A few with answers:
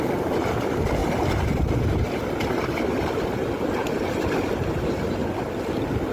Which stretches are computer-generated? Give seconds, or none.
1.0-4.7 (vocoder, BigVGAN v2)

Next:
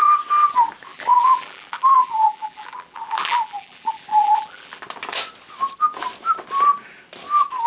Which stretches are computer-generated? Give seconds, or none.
0.9-4.8 (vocoder, BigVGAN v2)

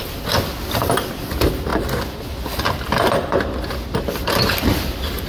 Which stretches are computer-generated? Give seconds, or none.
none